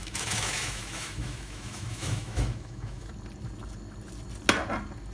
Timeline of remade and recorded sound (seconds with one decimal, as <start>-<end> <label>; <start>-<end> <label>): 0.0-3.1 remade; 3.1-5.1 recorded